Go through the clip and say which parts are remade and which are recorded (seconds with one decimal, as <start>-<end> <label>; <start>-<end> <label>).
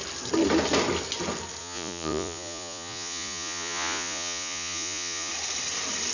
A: 0.0-1.6 recorded; 1.6-5.3 remade; 5.3-6.1 recorded